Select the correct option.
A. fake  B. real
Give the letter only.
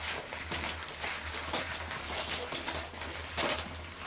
B